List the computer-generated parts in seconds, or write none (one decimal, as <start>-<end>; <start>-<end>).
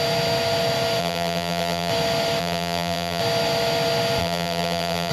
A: 1.0-1.9; 2.4-3.2; 4.2-5.1